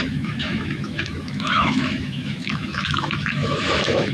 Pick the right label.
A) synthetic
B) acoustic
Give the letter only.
A